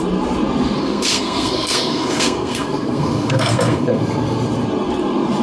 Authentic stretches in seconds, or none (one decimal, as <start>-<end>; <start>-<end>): 0.0-0.8; 4.0-5.4